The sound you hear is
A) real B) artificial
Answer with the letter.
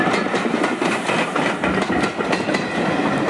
A